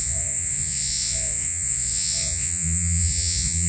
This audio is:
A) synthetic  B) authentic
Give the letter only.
A